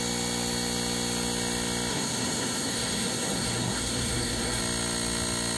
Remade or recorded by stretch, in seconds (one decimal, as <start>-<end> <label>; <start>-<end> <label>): 0.0-1.9 recorded; 1.9-4.6 remade; 4.6-5.6 recorded